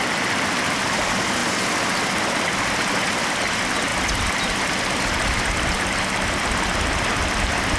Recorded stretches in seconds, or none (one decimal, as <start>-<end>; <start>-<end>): 0.0-7.8

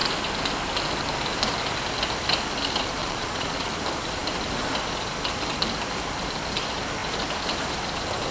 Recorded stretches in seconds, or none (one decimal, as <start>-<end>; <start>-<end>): 0.0-3.0; 3.7-8.3

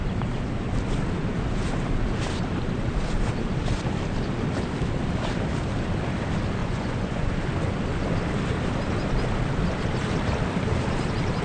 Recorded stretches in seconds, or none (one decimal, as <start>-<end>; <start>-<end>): 0.0-6.6; 7.3-11.4

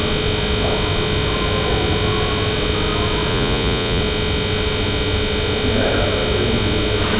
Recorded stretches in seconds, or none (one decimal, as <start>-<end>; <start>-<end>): 0.0-3.3; 4.0-7.2

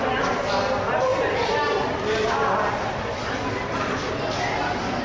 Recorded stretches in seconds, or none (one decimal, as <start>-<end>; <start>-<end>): 0.0-5.0

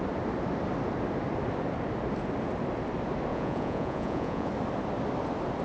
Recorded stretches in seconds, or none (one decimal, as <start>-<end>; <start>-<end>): 0.0-3.3; 4.5-5.6

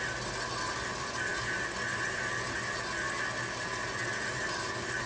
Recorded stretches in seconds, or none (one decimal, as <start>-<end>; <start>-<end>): 0.0-5.1

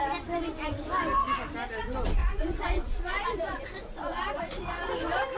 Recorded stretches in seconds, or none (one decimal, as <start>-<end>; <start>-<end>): 0.0-2.2; 4.9-5.4